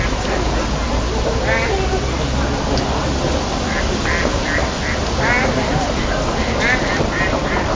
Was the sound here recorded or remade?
recorded